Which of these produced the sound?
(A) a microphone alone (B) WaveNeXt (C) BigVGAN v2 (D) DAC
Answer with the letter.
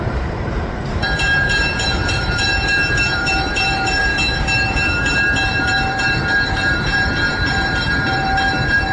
C